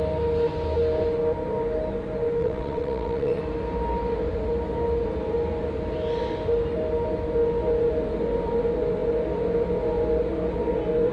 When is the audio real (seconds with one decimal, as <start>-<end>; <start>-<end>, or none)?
0.0-2.4; 3.4-11.1